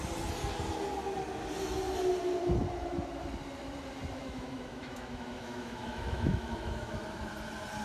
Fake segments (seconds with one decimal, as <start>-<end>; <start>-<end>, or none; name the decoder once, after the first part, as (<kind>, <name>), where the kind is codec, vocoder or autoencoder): 4.2-6.9 (autoencoder, DAC-VAE)

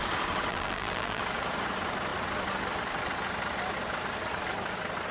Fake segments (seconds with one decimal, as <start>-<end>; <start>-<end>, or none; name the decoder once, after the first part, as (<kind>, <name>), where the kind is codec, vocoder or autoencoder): 0.5-1.2 (vocoder, BigVGAN v2)

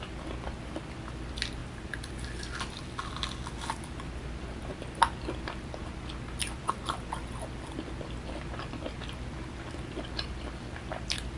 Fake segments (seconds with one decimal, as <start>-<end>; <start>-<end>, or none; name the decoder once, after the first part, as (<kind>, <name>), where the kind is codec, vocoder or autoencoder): none

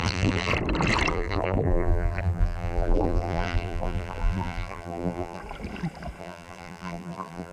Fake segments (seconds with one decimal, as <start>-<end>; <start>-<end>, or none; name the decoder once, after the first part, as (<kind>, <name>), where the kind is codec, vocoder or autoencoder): 0.0-0.5 (vocoder, BigVGAN v2); 1.1-5.4; 6.2-7.5